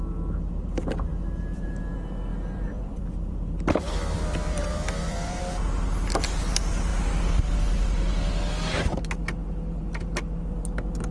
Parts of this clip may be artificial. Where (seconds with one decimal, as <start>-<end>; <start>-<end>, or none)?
1.1-1.7; 2.3-5.4